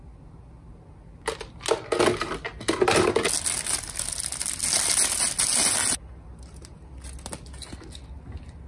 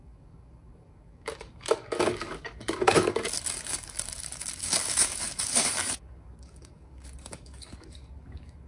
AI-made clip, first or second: second